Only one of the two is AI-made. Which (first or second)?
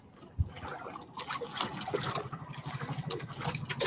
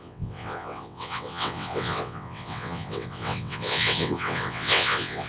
second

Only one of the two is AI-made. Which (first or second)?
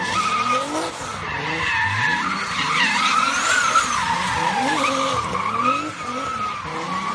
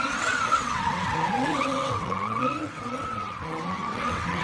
second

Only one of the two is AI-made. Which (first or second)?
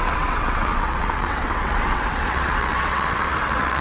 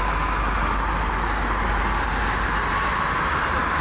first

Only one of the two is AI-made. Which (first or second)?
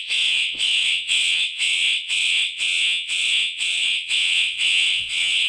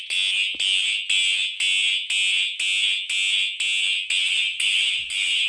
first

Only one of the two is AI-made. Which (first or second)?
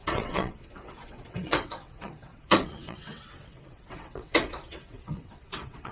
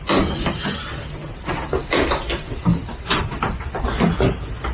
first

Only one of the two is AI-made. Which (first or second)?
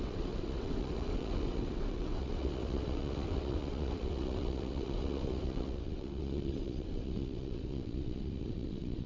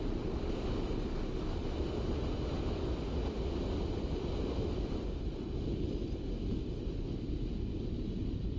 first